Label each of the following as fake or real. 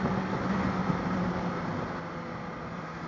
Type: real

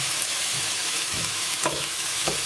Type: fake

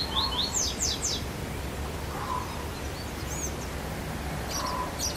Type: real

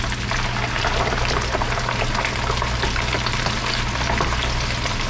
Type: real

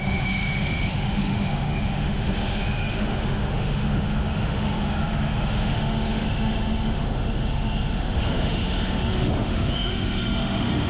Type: fake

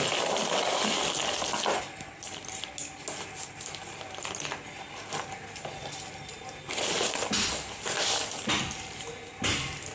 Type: real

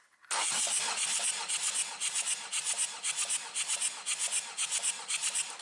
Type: real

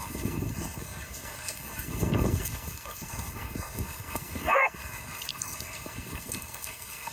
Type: fake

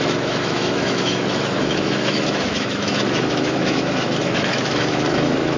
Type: fake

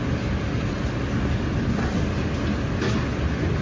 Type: real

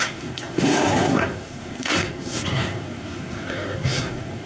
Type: fake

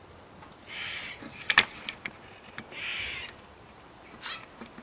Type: fake